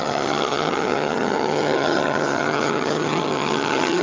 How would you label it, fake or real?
fake